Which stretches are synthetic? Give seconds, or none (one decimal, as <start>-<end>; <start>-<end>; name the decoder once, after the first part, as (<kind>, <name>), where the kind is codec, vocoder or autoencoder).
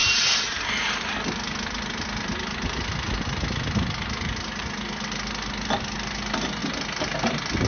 none